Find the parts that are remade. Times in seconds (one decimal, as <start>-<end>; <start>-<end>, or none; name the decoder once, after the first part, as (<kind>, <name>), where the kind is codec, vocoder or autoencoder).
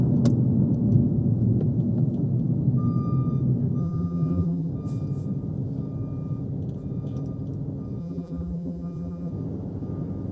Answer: 3.8-4.7 (vocoder, BigVGAN v2); 8.0-9.3